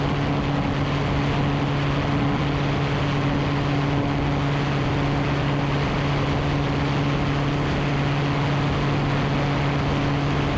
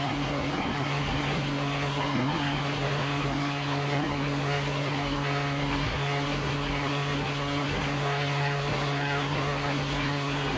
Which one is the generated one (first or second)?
second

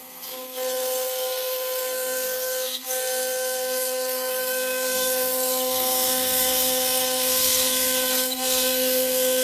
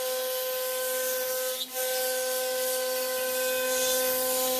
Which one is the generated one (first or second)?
first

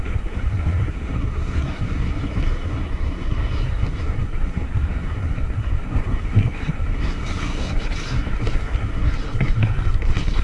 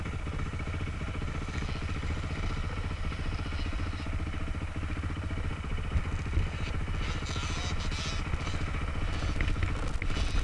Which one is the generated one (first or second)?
first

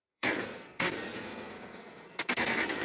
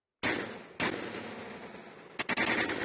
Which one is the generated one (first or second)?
first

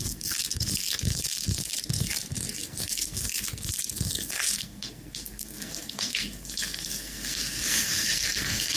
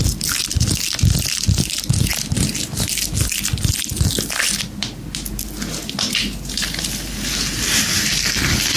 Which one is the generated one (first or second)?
first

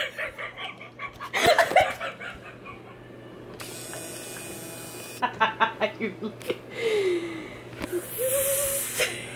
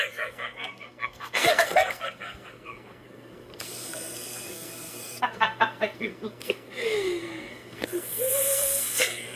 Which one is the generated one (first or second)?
second